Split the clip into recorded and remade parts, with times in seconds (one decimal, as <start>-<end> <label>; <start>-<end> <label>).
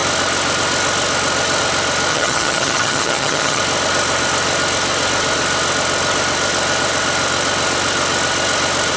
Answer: 0.0-2.1 recorded; 2.1-3.6 remade; 3.6-9.0 recorded